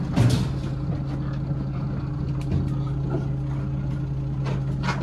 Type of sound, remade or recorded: recorded